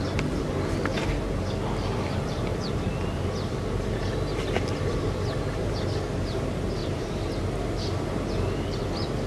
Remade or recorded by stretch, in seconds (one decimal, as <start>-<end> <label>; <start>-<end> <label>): 0.0-1.9 recorded; 1.9-3.2 remade; 3.2-6.8 recorded; 6.8-7.3 remade; 7.3-9.3 recorded